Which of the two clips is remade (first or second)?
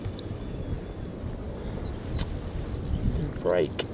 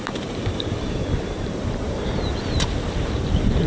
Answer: second